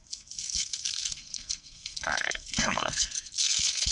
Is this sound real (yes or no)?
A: no